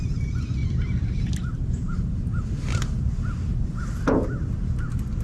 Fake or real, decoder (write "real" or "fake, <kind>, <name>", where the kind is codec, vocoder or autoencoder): real